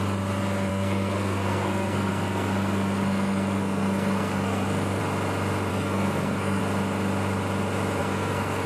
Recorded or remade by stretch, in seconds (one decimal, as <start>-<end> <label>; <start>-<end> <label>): 0.0-0.7 recorded; 0.7-5.0 remade; 5.0-5.7 recorded; 5.7-6.6 remade; 6.6-8.0 recorded; 8.0-8.7 remade